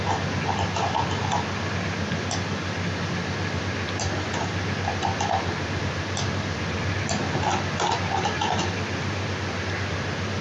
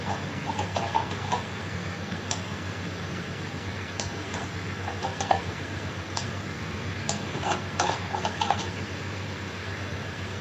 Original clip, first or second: first